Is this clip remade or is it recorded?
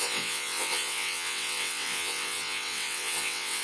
remade